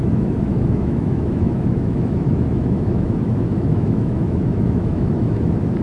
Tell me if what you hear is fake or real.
fake